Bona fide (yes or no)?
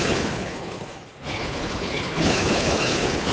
no